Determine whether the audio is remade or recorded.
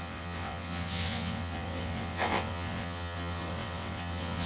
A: remade